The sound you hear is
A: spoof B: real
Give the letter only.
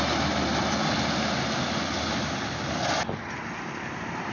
B